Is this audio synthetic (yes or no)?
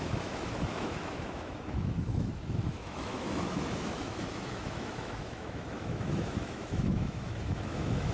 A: yes